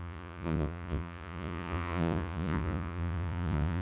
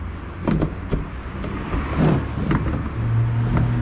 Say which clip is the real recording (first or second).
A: second